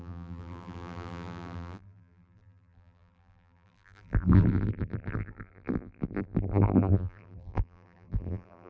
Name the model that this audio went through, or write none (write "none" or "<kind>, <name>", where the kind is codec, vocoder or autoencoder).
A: vocoder, BigVGAN v2